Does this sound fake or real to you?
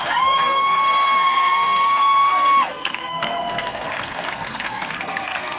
fake